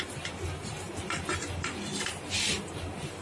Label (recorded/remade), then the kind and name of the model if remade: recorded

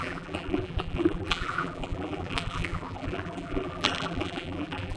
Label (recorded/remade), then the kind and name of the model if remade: remade, vocoder, BigVGAN v2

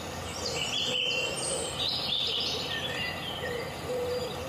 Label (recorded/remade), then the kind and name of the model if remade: recorded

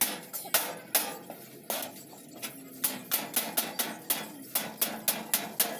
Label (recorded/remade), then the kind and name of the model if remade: recorded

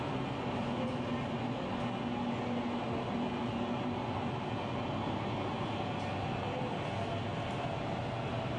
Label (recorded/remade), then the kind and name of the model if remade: recorded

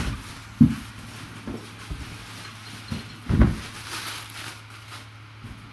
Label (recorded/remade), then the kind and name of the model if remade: recorded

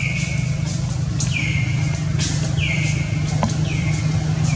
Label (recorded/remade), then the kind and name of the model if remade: recorded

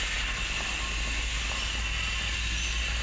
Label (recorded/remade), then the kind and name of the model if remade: recorded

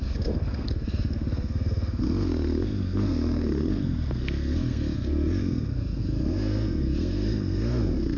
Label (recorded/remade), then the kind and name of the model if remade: remade, codec, SNAC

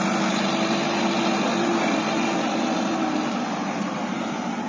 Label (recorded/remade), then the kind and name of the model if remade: recorded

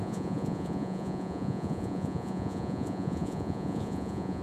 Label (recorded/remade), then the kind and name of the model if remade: remade, vocoder, Vocos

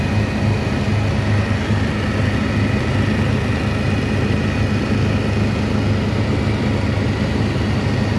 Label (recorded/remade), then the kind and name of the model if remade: recorded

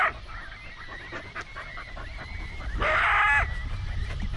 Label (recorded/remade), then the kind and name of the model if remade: recorded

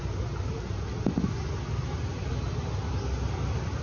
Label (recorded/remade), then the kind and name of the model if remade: recorded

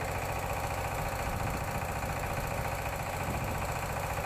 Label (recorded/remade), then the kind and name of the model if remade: recorded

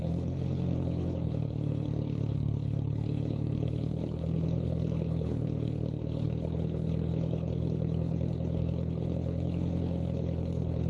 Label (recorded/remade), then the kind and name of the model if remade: remade, codec, HILCodec